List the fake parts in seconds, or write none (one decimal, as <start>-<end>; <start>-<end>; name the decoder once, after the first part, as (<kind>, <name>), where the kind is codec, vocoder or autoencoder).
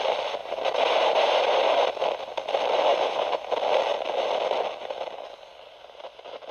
0.4-2.0 (vocoder, BigVGAN v2); 2.9-3.5